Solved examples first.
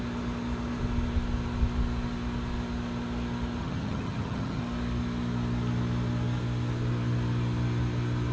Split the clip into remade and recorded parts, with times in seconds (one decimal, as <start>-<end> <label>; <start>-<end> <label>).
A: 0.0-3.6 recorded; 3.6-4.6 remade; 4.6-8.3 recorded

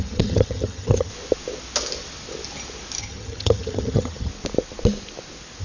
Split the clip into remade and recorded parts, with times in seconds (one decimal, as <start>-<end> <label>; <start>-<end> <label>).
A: 0.0-1.1 remade; 1.1-3.0 recorded; 3.0-4.3 remade; 4.3-5.6 recorded

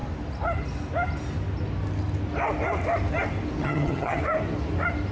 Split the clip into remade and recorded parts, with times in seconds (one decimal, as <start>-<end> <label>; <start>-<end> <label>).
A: 0.0-3.6 recorded; 3.6-4.2 remade; 4.2-5.1 recorded

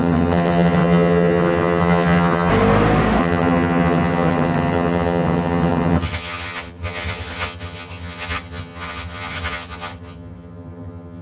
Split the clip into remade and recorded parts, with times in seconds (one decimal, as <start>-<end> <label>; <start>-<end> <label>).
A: 0.0-2.5 remade; 2.5-3.2 recorded; 3.2-11.2 remade